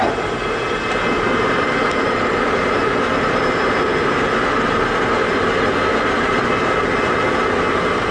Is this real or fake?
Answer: real